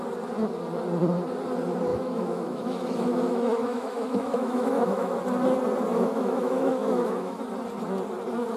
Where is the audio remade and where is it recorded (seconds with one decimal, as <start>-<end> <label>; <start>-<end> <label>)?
0.0-1.9 recorded; 1.9-5.2 remade; 5.2-5.9 recorded; 5.9-7.4 remade; 7.4-8.6 recorded